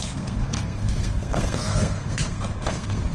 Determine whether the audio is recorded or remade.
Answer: remade